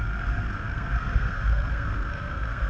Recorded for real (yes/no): no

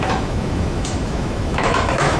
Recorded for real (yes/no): no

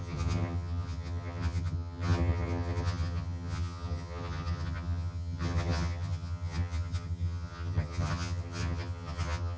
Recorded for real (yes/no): no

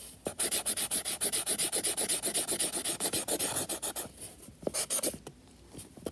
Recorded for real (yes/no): yes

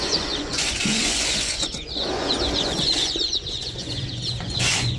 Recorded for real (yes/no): no